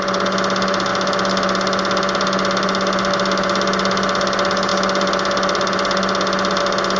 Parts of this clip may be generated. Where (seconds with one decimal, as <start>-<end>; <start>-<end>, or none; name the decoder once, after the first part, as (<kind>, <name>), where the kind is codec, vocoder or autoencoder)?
none